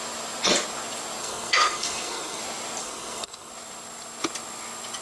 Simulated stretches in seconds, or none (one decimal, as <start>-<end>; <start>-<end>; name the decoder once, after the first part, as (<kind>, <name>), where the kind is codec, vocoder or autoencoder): 1.2-2.4 (codec, SNAC); 2.8-3.5